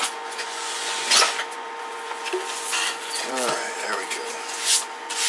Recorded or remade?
remade